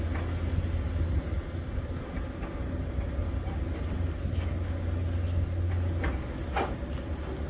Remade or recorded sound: recorded